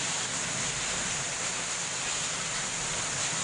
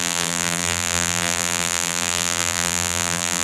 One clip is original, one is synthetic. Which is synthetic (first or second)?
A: second